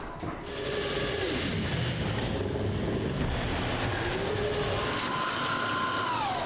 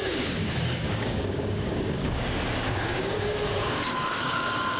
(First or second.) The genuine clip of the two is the first